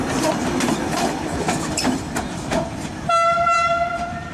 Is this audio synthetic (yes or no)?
yes